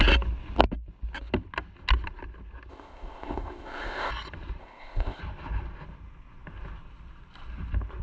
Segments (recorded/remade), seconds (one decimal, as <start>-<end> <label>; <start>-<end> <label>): 0.0-2.7 recorded; 2.7-4.1 remade; 4.1-4.6 recorded; 4.6-5.2 remade; 5.2-8.0 recorded